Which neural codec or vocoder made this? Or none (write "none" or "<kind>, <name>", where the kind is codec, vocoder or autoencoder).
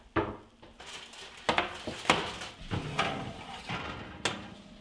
none